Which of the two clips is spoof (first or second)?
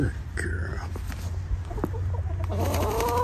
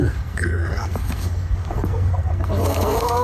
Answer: second